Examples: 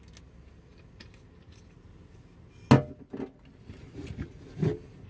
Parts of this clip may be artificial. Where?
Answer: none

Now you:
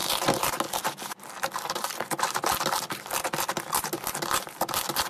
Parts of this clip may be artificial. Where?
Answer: none